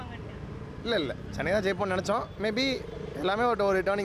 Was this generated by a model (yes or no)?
no